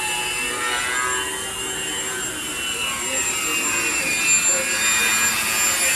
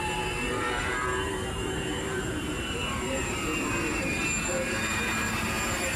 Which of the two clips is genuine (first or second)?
first